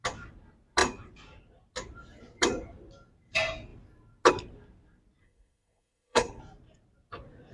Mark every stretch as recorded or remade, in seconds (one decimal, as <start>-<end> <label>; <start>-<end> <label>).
0.0-5.2 recorded; 5.2-6.4 remade; 6.4-7.5 recorded